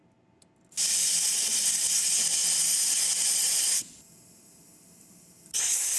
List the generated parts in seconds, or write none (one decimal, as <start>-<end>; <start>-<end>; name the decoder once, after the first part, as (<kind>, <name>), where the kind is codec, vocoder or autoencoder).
none